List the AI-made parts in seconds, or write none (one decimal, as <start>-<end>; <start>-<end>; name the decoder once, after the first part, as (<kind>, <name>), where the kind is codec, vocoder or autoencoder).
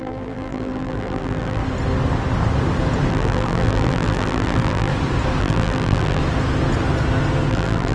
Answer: 0.0-1.6 (vocoder, BigVGAN v2); 3.1-4.9; 5.4-6.2; 7.5-7.9